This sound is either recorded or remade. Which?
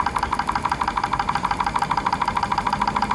recorded